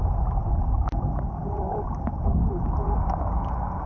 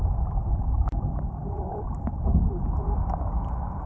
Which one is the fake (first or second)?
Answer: second